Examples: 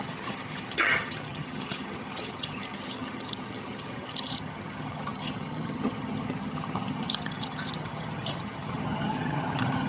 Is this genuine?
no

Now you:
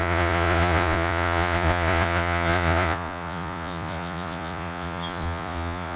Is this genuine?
no